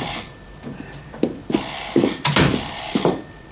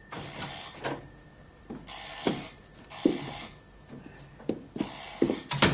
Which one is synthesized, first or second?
first